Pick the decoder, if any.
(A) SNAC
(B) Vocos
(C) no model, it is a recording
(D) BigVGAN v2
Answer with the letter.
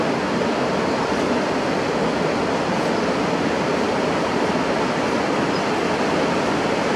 C